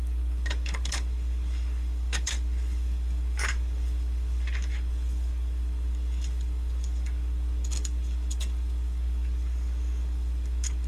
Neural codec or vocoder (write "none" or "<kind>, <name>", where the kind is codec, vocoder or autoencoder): codec, DAC